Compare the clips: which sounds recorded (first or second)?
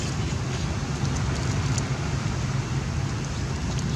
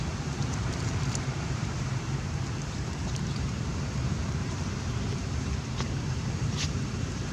first